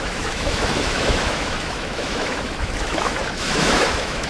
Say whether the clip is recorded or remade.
remade